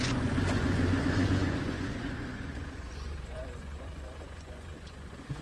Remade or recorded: remade